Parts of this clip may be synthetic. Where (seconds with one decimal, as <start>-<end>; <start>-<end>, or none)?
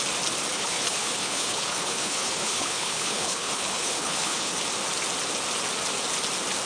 0.5-4.5